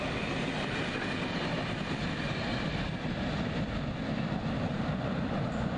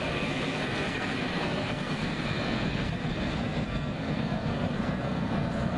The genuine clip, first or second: first